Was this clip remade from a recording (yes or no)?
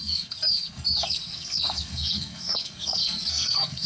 yes